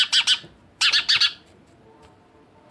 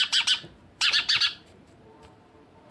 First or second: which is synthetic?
second